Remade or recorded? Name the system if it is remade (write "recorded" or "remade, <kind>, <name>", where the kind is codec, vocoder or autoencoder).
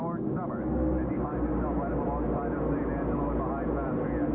recorded